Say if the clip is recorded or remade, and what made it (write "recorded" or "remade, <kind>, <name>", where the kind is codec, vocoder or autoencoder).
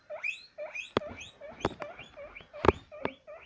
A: recorded